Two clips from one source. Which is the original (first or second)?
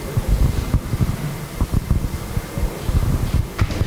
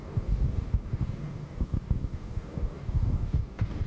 first